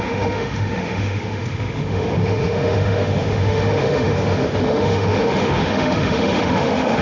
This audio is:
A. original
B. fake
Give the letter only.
B